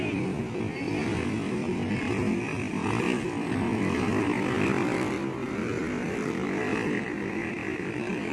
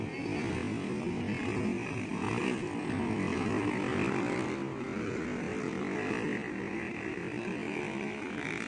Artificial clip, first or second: first